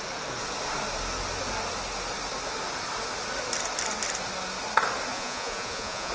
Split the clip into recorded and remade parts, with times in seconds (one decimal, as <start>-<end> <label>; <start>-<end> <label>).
0.0-5.1 recorded; 5.1-6.1 remade